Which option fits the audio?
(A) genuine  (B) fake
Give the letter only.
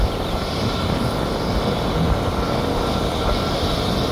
A